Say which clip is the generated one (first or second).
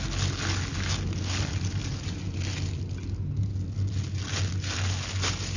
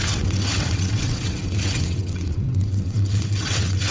second